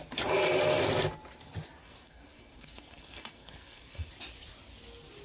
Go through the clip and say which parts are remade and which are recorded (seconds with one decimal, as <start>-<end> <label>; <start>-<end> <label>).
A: 0.0-1.8 recorded; 1.8-4.1 remade; 4.1-5.2 recorded